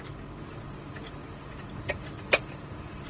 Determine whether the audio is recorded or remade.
recorded